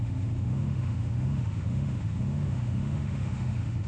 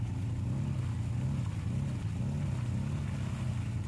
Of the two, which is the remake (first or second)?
first